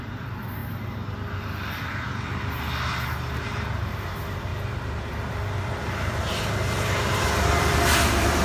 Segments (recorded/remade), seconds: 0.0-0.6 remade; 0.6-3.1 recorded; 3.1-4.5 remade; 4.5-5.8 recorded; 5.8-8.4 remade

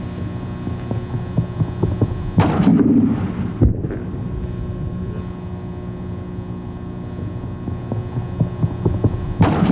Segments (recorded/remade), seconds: 0.0-2.7 recorded; 2.7-4.4 remade; 4.4-9.7 recorded

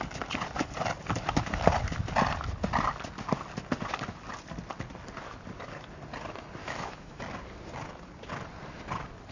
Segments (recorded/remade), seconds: 0.0-6.6 recorded; 6.6-7.2 remade; 7.2-9.3 recorded